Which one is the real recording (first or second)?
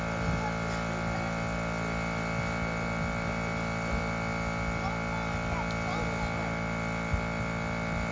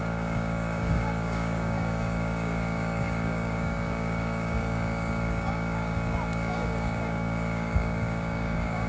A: first